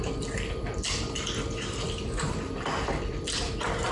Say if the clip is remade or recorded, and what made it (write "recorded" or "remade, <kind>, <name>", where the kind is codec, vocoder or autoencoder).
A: recorded